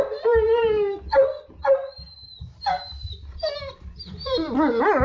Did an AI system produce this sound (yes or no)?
no